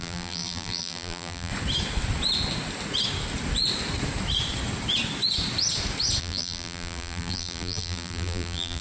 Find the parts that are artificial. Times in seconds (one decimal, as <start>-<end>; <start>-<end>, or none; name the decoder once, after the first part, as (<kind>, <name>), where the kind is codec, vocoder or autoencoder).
0.0-1.5 (vocoder, BigVGAN v2); 6.2-8.8